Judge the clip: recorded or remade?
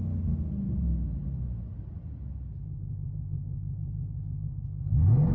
recorded